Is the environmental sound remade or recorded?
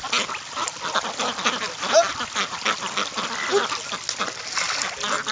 recorded